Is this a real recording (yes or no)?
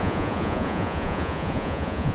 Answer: no